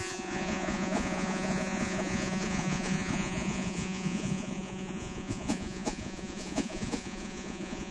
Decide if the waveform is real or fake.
fake